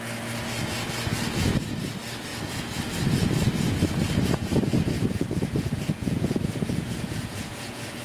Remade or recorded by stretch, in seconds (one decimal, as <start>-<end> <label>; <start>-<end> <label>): 0.0-2.3 recorded; 2.3-2.9 remade; 2.9-5.0 recorded; 5.0-8.0 remade